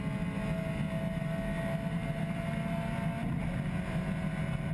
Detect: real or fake real